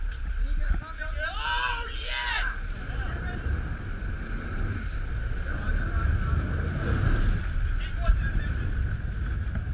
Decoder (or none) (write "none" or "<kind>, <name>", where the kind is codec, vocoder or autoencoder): none